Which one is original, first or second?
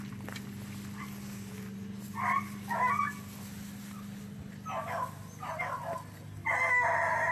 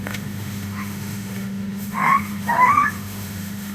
first